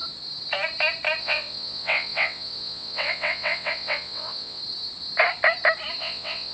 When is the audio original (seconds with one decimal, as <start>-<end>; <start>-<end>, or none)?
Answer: 0.0-1.2; 4.6-6.0

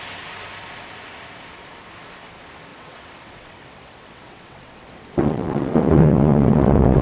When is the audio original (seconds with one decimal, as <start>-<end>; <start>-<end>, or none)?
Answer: 0.0-2.7

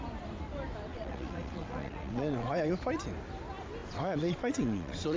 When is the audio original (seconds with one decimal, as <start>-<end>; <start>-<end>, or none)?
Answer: 0.0-0.9; 2.7-3.8

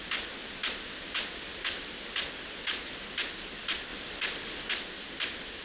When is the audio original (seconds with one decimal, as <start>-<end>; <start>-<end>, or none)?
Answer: 0.0-5.6